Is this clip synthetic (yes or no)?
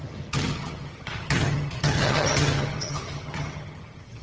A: yes